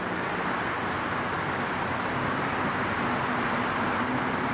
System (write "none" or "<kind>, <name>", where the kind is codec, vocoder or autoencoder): none